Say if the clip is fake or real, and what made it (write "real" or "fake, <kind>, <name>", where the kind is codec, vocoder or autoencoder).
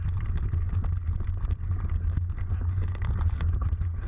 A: real